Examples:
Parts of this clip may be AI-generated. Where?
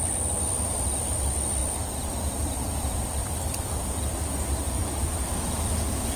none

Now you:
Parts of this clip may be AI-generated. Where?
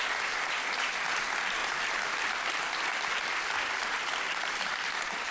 1.6-4.8 (vocoder, BigVGAN v2)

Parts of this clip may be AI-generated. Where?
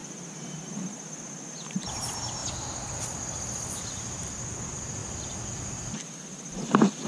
5.0-6.0 (vocoder, BigVGAN v2)